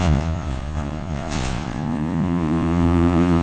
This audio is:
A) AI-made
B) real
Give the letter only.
A